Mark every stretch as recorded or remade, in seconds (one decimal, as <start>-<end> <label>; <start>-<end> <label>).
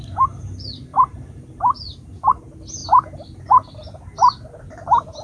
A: 0.0-5.2 recorded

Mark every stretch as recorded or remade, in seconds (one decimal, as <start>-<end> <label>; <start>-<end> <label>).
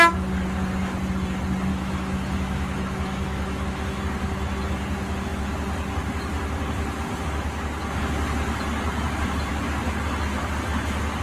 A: 0.0-1.7 recorded; 1.7-4.0 remade; 4.0-11.2 recorded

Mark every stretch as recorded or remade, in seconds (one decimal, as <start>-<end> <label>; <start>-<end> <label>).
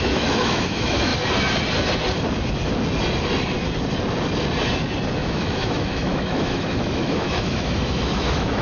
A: 0.0-1.1 remade; 1.1-5.2 recorded; 5.2-8.6 remade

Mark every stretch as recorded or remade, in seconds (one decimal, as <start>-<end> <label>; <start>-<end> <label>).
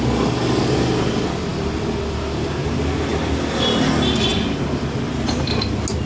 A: 0.0-6.1 recorded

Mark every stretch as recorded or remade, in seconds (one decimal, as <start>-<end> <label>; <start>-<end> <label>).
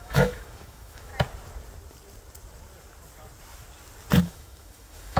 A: 0.0-1.1 remade; 1.1-4.2 recorded; 4.2-5.2 remade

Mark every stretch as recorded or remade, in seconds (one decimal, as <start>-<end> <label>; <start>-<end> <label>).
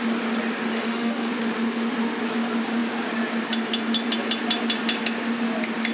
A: 0.0-0.7 recorded; 0.7-1.3 remade; 1.3-5.9 recorded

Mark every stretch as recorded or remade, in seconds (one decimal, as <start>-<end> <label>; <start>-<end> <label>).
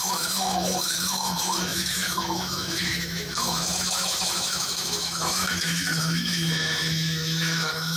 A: 0.0-8.0 remade